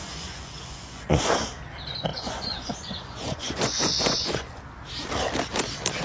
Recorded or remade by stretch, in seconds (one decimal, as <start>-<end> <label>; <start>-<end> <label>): 0.0-1.2 remade; 1.2-2.1 recorded; 2.1-4.6 remade; 4.6-6.0 recorded